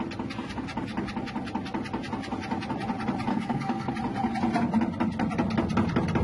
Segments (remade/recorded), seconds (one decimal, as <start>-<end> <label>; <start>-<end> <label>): 0.0-3.3 recorded; 3.3-3.9 remade; 3.9-6.2 recorded